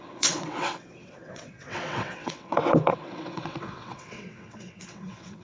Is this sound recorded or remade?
remade